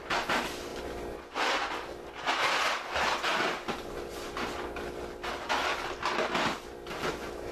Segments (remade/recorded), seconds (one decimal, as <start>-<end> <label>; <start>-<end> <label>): 0.0-7.5 recorded